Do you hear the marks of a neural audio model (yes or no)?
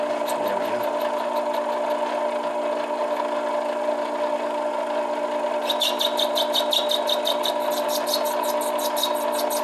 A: no